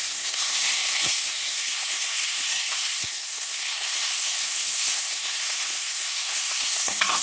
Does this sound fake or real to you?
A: fake